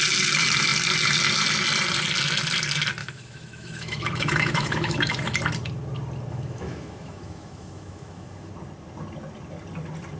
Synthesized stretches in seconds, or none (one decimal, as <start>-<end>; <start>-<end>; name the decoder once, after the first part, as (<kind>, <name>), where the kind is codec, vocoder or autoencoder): 3.0-5.4 (autoencoder, DAC-VAE); 6.3-8.5